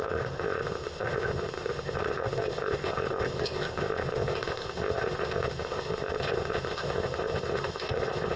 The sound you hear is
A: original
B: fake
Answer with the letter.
B